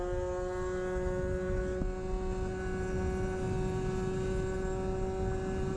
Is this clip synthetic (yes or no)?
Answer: no